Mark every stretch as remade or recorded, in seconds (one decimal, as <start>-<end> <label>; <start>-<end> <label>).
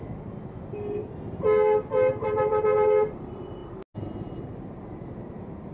0.0-5.7 recorded